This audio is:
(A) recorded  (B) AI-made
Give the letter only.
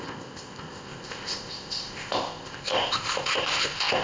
B